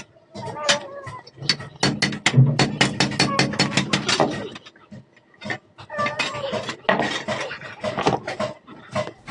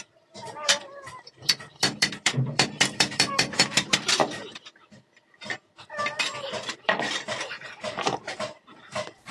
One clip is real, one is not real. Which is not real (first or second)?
second